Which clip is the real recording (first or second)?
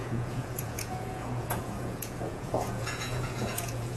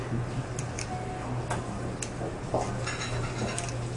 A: second